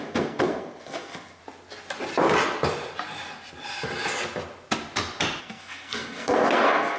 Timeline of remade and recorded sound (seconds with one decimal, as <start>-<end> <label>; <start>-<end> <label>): 0.0-1.4 remade; 1.4-5.4 recorded; 5.4-7.0 remade

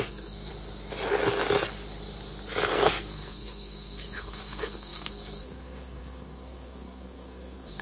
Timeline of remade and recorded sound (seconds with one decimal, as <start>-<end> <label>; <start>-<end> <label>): 0.0-0.5 remade; 0.5-2.7 recorded; 2.7-7.8 remade

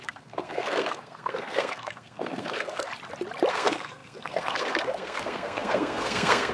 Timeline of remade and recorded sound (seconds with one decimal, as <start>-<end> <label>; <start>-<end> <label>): 0.0-2.9 remade; 2.9-3.5 recorded; 3.5-6.5 remade

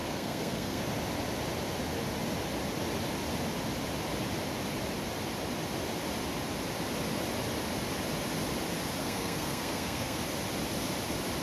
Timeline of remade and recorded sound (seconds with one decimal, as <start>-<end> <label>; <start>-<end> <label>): 0.0-0.8 remade; 0.8-9.0 recorded; 9.0-10.2 remade; 10.2-11.4 recorded